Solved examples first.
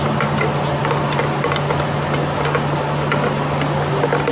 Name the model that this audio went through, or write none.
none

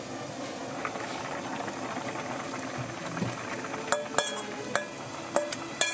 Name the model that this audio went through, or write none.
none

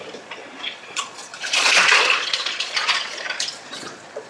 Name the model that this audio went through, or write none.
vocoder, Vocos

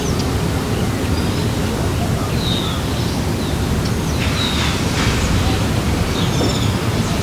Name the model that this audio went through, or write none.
none